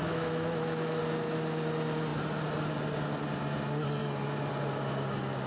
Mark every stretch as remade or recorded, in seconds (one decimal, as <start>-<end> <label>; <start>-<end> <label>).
0.0-1.0 remade; 1.0-5.5 recorded